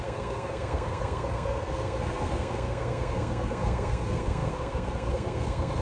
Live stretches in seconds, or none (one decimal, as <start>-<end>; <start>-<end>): none